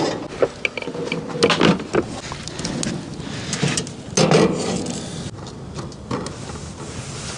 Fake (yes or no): no